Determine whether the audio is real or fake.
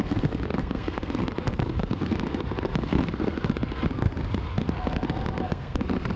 fake